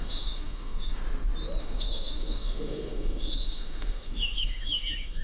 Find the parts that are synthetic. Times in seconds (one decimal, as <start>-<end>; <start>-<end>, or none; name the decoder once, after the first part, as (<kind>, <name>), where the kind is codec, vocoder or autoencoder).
0.0-1.0 (autoencoder, DAC-VAE); 1.6-5.2